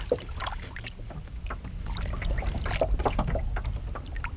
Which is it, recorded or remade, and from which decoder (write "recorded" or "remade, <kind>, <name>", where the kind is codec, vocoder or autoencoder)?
recorded